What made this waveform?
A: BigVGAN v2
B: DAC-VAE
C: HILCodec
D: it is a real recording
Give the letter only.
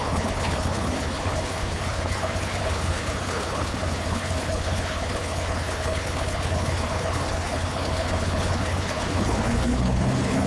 C